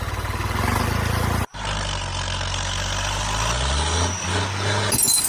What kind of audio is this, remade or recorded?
recorded